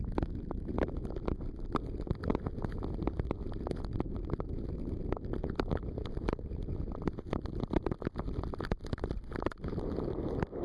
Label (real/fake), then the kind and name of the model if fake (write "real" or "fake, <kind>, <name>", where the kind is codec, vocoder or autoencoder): real